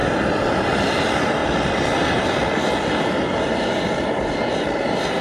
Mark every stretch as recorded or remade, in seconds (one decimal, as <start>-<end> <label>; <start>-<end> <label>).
0.0-0.8 remade; 0.8-5.2 recorded